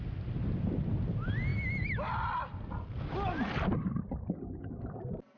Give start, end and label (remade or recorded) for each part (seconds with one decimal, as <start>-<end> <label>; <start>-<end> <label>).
0.0-5.4 recorded